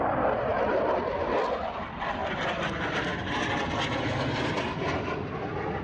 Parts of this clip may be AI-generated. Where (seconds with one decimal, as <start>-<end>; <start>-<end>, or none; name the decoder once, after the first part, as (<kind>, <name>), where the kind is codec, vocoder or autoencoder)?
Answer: 0.5-1.2 (vocoder, BigVGAN v2)

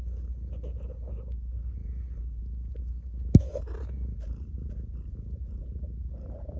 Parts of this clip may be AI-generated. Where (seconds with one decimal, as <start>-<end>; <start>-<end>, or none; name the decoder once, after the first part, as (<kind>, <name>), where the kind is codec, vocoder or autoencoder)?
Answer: 1.8-2.4 (vocoder, BigVGAN v2); 3.5-4.7

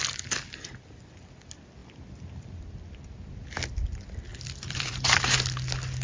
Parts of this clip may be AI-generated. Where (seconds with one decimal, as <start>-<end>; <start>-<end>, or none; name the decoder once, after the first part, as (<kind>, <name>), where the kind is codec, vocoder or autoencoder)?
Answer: 1.8-2.6 (vocoder, BigVGAN v2); 4.3-5.0

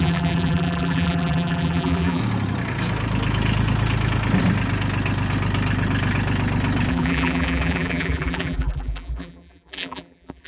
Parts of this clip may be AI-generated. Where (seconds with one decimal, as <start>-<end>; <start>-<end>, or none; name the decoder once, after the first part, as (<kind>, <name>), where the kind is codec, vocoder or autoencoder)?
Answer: 0.0-2.2 (vocoder, BigVGAN v2); 6.9-10.5